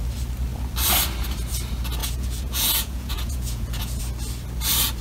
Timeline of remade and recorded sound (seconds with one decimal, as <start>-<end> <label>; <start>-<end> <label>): 0.0-2.0 recorded; 2.0-4.0 remade; 4.0-5.0 recorded